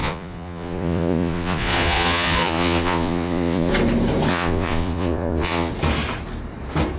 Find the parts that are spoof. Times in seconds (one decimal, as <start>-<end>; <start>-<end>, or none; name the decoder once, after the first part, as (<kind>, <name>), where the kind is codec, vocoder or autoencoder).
0.0-3.7 (vocoder, Vocos); 4.3-5.7